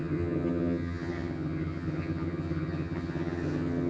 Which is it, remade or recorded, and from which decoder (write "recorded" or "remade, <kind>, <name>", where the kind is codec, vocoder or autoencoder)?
remade, vocoder, HiFi-GAN